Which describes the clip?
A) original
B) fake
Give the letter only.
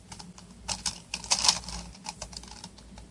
B